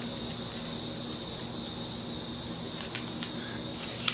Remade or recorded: recorded